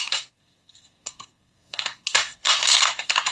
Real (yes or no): no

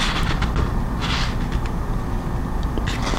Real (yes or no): yes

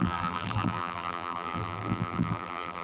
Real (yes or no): no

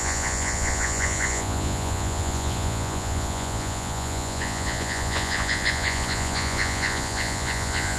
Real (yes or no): no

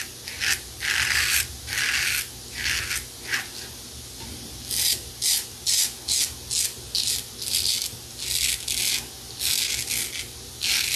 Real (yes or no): yes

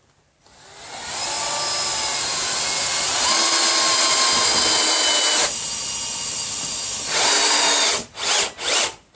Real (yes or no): yes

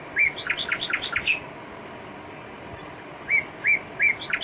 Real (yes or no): yes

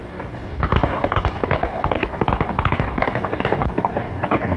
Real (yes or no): no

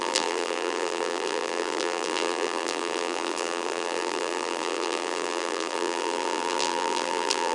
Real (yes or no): no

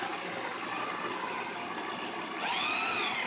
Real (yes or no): yes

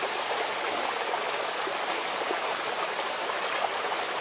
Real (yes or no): yes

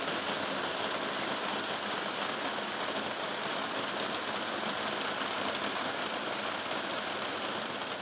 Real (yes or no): yes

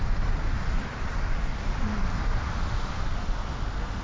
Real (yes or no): yes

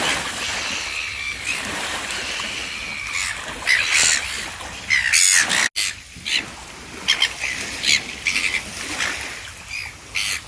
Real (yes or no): yes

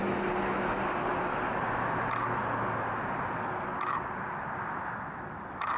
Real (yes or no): yes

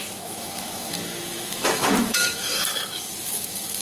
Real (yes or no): no